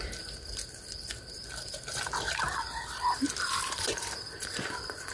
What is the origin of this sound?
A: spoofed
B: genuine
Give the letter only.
A